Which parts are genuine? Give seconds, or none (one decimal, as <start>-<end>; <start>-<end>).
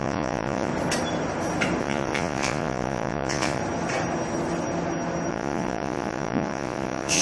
0.7-1.8; 3.6-5.3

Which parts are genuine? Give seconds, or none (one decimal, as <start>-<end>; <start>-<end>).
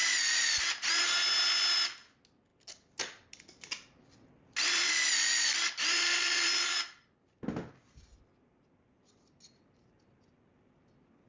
0.0-11.3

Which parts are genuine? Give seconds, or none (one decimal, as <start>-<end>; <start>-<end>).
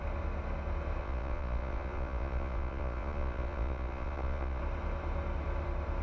0.0-1.0; 4.6-6.0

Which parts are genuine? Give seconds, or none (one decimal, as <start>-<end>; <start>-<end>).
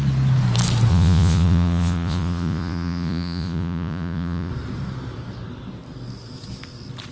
0.0-0.9; 4.5-7.1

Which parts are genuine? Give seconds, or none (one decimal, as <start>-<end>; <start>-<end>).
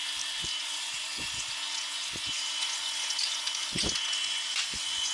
0.0-0.6